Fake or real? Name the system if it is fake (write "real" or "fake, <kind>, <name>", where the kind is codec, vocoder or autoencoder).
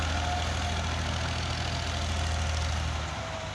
real